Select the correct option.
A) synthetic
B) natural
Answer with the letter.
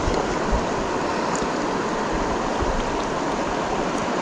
B